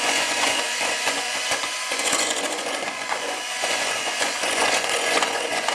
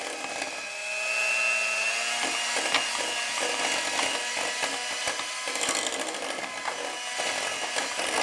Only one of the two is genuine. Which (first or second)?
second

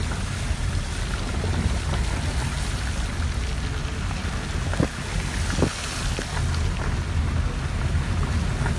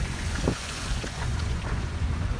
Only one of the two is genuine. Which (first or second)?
first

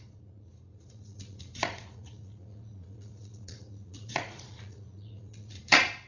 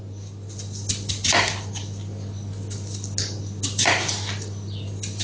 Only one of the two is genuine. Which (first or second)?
second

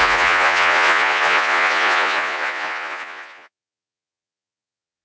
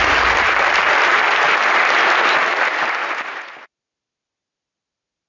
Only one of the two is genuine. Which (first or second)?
second